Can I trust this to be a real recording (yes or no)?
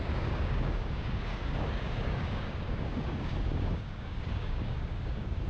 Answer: no